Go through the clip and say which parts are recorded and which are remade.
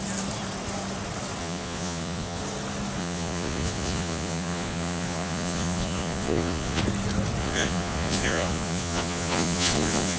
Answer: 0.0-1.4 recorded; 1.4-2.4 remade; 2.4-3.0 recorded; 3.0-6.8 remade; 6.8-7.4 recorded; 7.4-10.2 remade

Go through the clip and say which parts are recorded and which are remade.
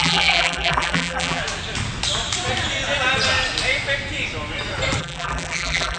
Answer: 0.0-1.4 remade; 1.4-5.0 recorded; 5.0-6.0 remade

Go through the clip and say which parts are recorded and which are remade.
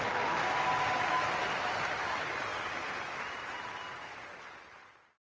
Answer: 0.0-5.4 recorded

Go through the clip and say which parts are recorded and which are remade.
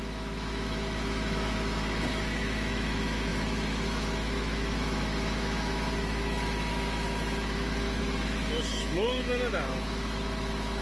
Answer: 0.0-10.8 remade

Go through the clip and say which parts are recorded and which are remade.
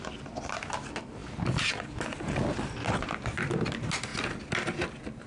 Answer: 0.0-5.3 recorded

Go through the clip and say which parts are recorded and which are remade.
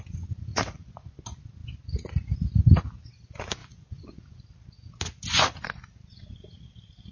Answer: 0.0-0.5 recorded; 0.5-1.2 remade; 1.2-3.6 recorded; 3.6-4.4 remade; 4.4-7.1 recorded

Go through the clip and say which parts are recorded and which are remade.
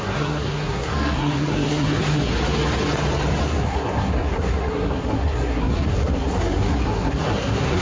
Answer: 0.0-2.3 remade; 2.3-3.4 recorded; 3.4-7.8 remade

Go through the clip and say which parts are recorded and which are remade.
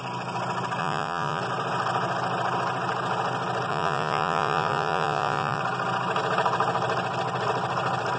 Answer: 0.0-0.8 recorded; 0.8-1.4 remade; 1.4-3.7 recorded; 3.7-5.6 remade; 5.6-8.2 recorded